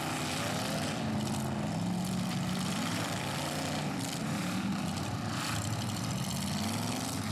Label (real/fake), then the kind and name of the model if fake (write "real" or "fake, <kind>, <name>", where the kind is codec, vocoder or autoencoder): real